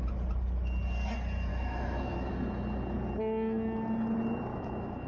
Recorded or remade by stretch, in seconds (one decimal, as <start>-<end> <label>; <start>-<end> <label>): 0.0-1.5 recorded; 1.5-2.3 remade; 2.3-4.5 recorded; 4.5-5.1 remade